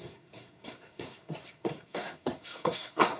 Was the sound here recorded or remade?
remade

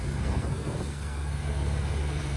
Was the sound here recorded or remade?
remade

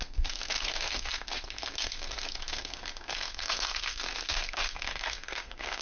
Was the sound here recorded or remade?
remade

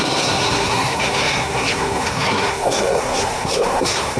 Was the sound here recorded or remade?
remade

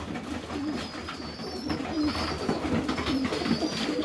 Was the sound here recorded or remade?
recorded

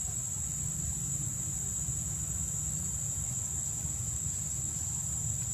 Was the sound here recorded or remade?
recorded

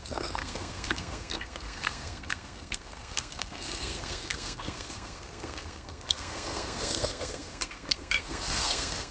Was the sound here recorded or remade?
remade